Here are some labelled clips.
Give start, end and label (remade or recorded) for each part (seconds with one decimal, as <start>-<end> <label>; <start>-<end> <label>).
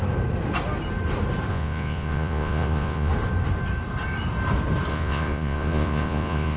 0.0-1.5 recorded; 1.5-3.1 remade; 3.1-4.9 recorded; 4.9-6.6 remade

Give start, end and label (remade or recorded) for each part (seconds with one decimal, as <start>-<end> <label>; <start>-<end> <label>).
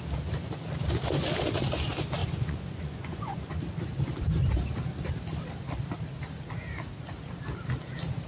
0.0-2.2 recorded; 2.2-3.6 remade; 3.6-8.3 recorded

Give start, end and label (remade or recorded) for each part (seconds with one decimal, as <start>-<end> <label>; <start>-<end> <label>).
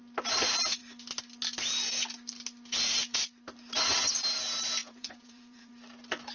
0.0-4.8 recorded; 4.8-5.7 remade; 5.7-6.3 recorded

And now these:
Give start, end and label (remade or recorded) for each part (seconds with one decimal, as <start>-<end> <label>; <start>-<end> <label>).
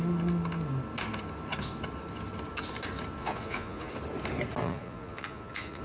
0.0-3.2 recorded; 3.2-3.9 remade; 3.9-4.6 recorded; 4.6-5.8 remade